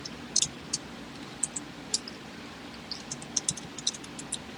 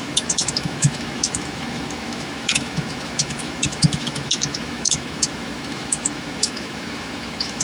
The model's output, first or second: second